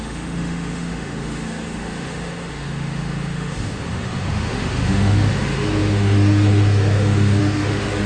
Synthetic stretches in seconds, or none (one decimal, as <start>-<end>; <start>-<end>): 0.0-8.1

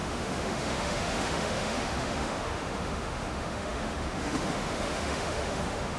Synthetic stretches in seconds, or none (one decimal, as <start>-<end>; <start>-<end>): 0.0-6.0

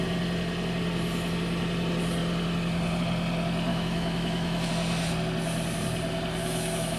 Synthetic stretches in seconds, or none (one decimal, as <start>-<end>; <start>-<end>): 3.7-4.7; 6.4-7.0

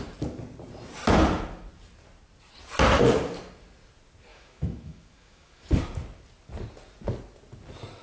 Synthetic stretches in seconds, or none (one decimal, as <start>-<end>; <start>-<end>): 4.3-5.8

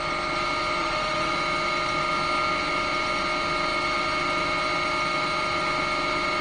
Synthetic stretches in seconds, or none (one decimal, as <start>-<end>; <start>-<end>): 0.8-1.3

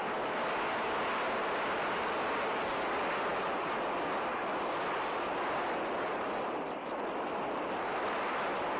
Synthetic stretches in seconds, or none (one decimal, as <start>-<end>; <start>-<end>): none

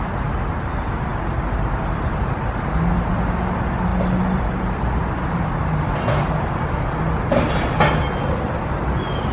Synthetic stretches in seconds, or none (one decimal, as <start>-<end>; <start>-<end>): none

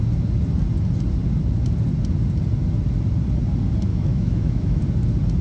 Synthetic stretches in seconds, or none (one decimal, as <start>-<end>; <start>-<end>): 3.9-4.8